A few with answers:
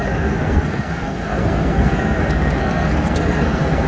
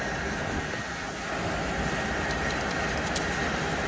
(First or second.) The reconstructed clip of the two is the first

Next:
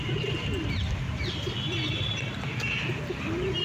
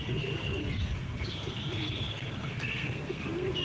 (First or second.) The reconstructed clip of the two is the second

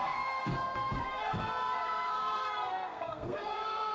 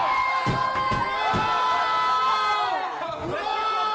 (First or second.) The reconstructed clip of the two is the first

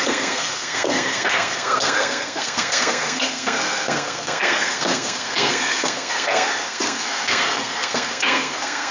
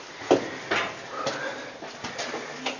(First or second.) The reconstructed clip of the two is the first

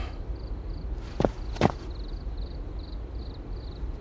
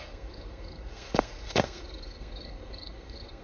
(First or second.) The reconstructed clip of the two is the second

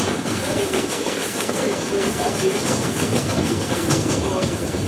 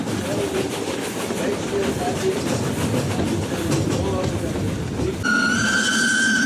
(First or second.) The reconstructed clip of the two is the first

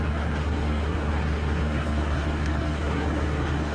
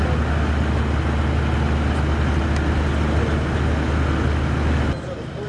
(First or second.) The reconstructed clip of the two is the first